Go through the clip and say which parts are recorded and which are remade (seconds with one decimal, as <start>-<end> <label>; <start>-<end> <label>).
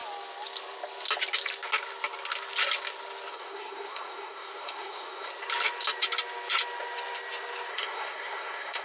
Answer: 0.0-3.3 recorded; 3.3-5.3 remade; 5.3-7.7 recorded; 7.7-8.8 remade